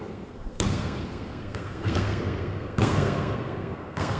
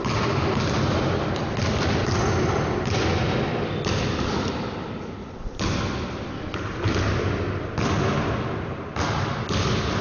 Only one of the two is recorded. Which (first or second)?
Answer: second